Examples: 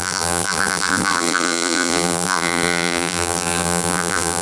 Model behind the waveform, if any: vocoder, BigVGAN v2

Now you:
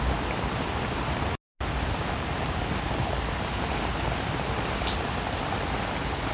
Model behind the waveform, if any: none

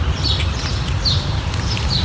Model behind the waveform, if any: none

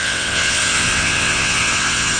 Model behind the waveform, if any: vocoder, WaveNeXt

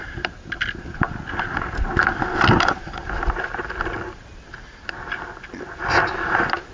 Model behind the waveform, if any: none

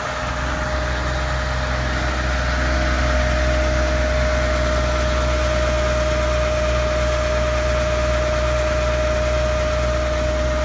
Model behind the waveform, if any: none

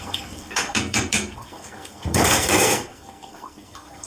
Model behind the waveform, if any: codec, SNAC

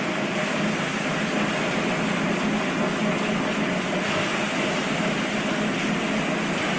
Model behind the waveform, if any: none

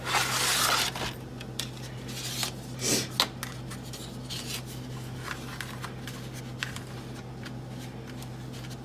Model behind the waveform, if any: none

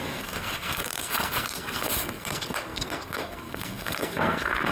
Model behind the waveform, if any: codec, SNAC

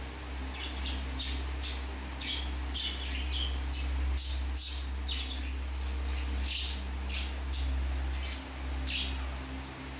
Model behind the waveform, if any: none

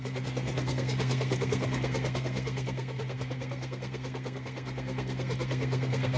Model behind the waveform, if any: codec, SNAC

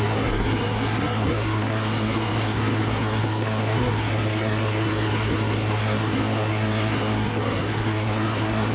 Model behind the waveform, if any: codec, SNAC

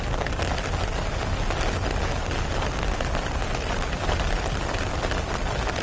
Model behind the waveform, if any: none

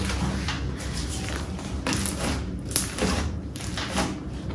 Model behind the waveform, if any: none